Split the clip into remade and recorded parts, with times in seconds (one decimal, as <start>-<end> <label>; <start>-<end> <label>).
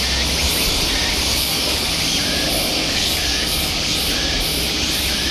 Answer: 0.0-1.3 recorded; 1.3-2.0 remade; 2.0-2.8 recorded; 2.8-3.8 remade; 3.8-5.3 recorded